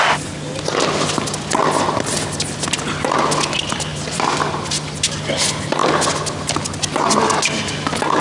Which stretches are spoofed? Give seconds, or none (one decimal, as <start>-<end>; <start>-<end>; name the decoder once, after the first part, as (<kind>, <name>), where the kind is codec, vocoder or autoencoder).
none